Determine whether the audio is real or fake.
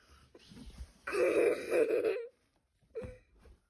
fake